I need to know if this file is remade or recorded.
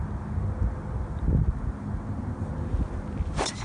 recorded